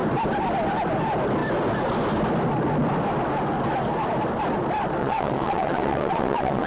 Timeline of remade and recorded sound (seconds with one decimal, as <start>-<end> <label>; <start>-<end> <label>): 0.0-5.0 recorded; 5.0-6.7 remade